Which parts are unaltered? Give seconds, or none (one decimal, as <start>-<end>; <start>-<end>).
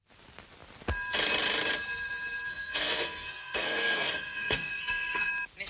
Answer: 0.0-2.5; 5.3-5.7